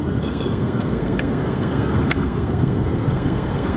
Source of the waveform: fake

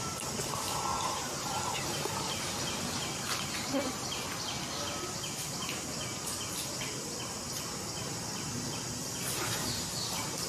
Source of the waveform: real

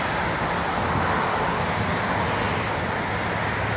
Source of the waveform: real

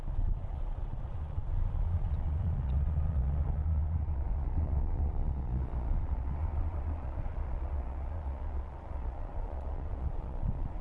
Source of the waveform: fake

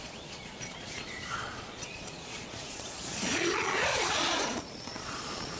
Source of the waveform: fake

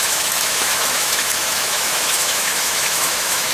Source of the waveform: fake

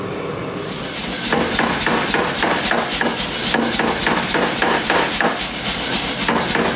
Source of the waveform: real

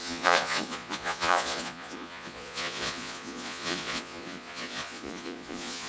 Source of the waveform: fake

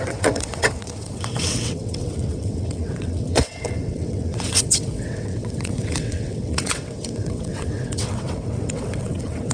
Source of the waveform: fake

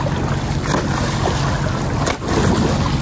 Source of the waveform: real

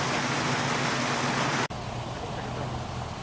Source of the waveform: real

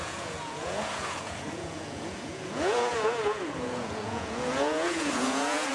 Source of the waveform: fake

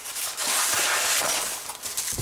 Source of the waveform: real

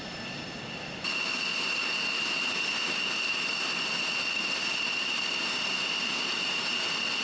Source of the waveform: real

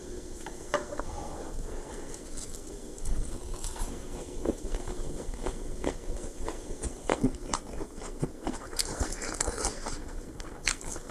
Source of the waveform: fake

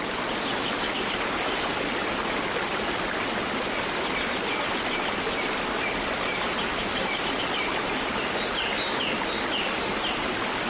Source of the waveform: real